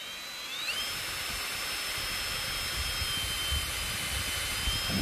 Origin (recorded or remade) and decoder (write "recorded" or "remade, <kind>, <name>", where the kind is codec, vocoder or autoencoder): recorded